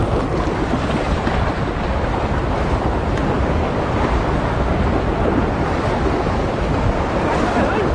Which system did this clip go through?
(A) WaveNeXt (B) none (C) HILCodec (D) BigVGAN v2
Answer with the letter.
B